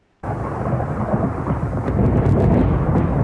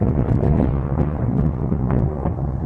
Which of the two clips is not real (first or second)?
second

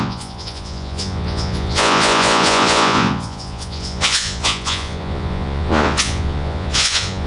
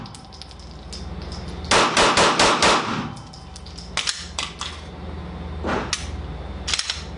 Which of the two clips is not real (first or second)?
first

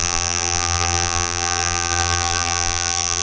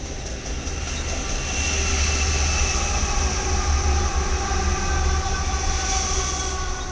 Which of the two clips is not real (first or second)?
first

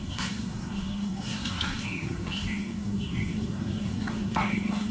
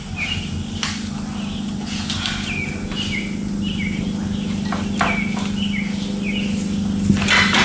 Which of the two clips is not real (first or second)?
first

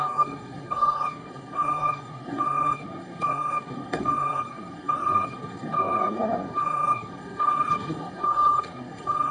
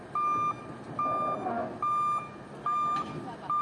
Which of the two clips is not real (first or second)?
first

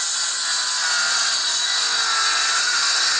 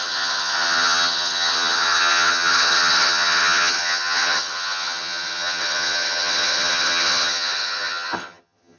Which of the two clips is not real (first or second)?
second